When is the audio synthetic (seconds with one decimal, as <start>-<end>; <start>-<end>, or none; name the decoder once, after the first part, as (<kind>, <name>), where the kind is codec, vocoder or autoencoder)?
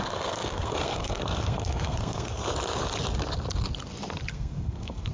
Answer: 0.0-2.4 (codec, SNAC); 4.3-5.1